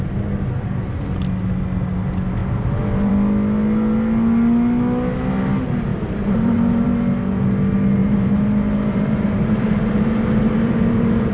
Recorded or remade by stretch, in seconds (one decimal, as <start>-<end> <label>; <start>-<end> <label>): 0.0-2.4 recorded; 2.4-3.1 remade; 3.1-5.9 recorded; 5.9-6.9 remade; 6.9-8.0 recorded; 8.0-11.3 remade